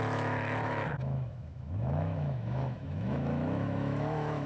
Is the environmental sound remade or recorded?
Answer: remade